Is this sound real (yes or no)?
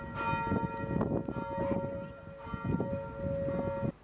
yes